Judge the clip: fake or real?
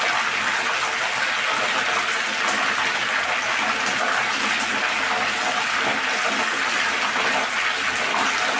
real